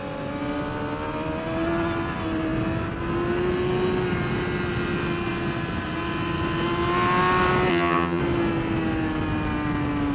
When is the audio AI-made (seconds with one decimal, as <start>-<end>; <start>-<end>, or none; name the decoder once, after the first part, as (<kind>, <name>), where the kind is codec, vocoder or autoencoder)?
7.7-8.2 (vocoder, HiFi-GAN)